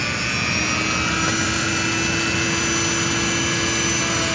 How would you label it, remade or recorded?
recorded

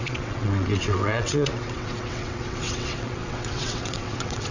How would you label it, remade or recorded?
remade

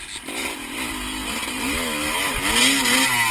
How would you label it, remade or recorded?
recorded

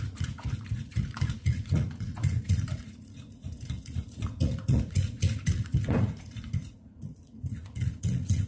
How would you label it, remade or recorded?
remade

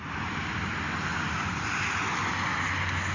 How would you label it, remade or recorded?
recorded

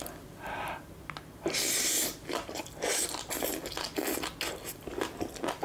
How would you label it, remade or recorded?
recorded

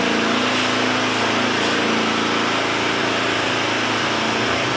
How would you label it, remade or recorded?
recorded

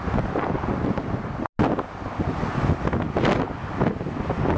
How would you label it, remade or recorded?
recorded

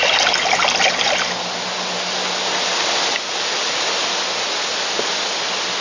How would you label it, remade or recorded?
recorded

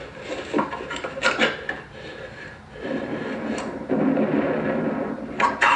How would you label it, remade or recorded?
remade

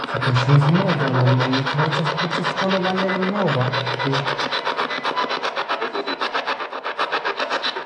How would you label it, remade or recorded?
recorded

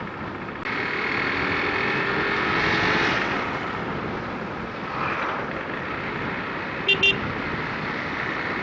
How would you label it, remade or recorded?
recorded